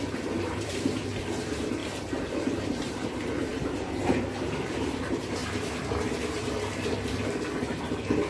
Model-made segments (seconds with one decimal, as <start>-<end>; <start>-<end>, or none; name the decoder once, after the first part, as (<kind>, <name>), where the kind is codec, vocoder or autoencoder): 0.0-1.8 (vocoder, BigVGAN v2); 2.6-5.4; 6.9-8.3